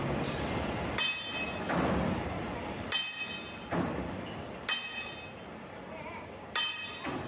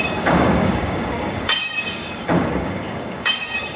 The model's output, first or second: second